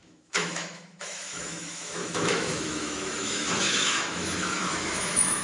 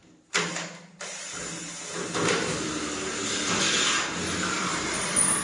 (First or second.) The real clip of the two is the second